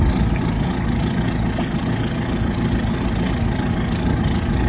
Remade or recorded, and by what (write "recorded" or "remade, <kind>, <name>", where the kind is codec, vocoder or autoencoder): recorded